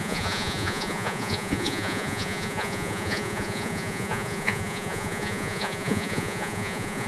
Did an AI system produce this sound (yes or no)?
yes